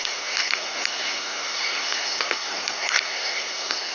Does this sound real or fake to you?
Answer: fake